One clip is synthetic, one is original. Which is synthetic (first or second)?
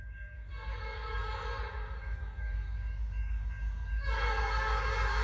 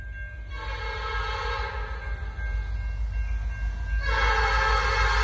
first